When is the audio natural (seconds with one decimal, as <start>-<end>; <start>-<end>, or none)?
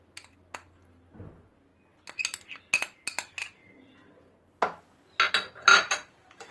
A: 0.0-5.7